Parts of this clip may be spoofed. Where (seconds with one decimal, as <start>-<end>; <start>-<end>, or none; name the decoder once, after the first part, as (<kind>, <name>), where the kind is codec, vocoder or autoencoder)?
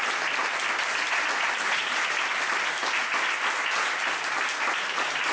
none